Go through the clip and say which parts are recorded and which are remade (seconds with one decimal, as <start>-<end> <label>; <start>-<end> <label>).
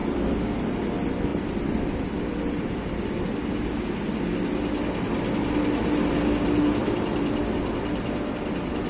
0.0-0.8 remade; 0.8-1.3 recorded; 1.3-3.0 remade; 3.0-6.8 recorded; 6.8-7.4 remade; 7.4-8.9 recorded